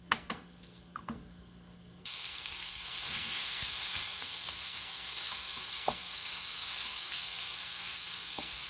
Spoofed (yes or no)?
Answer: yes